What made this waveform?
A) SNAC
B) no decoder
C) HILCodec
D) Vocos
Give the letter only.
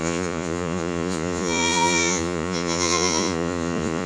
D